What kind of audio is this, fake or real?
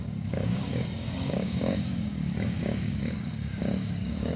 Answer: fake